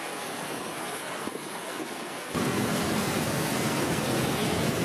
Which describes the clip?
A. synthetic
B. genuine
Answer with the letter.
A